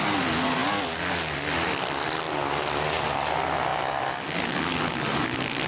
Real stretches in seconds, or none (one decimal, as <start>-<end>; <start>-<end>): 0.0-5.7